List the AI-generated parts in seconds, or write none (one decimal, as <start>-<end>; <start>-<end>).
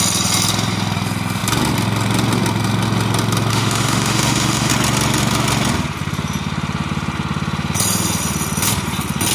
3.5-4.7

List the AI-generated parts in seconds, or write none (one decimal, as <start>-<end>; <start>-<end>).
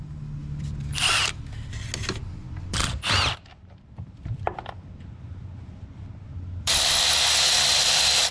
0.4-1.2; 2.4-7.2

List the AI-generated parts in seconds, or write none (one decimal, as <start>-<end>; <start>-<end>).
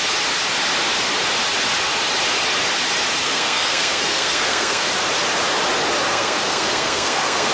3.2-4.9; 6.1-7.5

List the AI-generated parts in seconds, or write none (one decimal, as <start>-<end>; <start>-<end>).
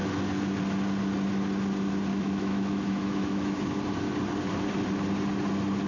2.1-3.6